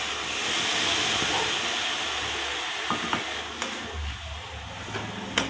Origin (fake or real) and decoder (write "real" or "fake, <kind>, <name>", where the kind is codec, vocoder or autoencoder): real